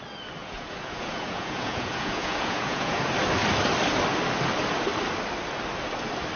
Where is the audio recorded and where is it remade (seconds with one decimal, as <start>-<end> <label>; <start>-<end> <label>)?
0.0-0.4 recorded; 0.4-3.1 remade; 3.1-6.4 recorded